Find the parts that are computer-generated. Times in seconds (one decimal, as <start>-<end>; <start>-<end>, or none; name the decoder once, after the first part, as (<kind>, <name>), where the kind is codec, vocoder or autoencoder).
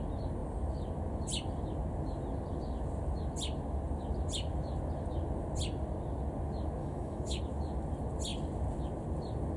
6.8-7.4 (autoencoder, DAC-VAE)